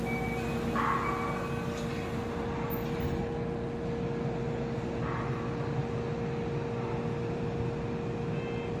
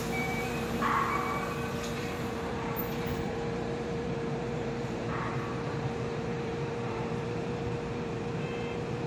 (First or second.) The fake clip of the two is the second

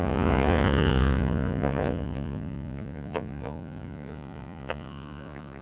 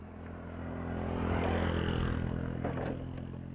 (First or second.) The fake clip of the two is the first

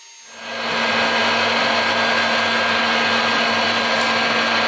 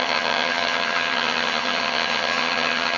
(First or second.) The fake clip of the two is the second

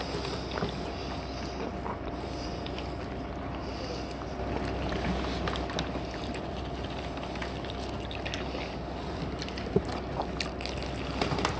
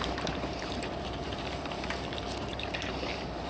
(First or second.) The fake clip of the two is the second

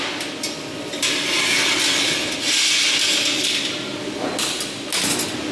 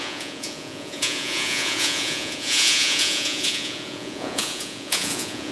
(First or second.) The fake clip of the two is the second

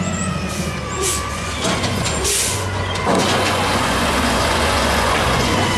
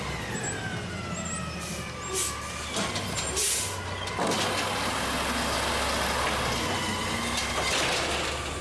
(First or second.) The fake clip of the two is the first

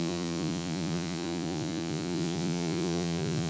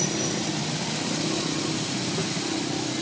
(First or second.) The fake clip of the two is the first